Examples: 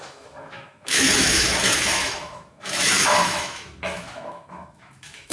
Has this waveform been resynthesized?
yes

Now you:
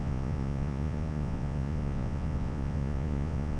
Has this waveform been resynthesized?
yes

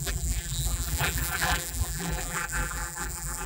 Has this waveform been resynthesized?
yes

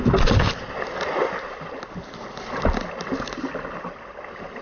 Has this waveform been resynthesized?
no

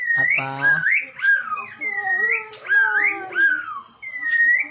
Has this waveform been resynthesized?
no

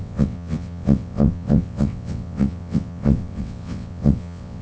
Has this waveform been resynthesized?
yes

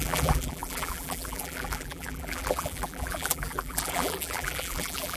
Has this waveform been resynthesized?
yes